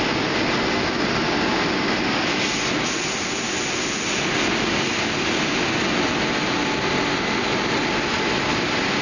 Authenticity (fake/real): real